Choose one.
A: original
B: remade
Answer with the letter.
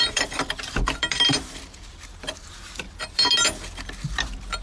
B